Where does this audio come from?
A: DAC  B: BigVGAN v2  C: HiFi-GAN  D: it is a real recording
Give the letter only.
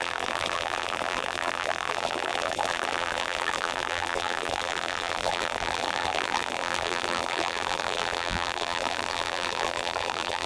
B